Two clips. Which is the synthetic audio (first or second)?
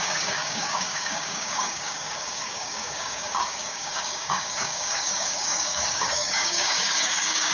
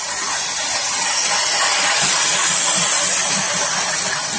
first